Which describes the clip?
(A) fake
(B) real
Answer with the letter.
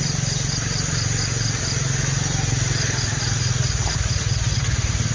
B